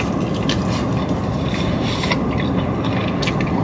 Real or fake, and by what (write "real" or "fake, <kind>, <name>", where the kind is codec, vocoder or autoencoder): real